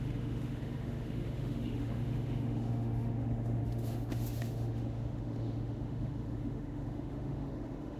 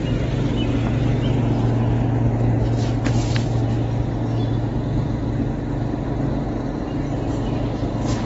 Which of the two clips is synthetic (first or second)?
first